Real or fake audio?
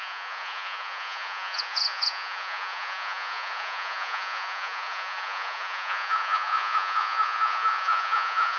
fake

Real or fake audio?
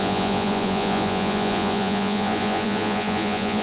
fake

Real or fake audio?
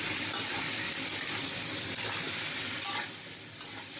real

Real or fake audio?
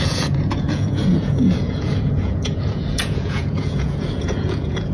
fake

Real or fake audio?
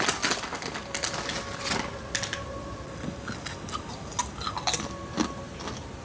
real